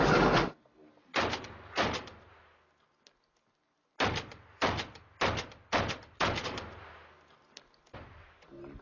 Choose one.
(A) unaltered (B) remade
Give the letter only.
A